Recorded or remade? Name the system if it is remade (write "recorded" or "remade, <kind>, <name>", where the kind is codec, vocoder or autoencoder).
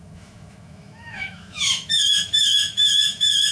remade, autoencoder, DAC-VAE